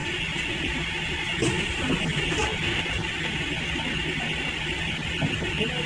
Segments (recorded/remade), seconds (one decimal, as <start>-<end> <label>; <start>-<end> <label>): 0.0-5.9 recorded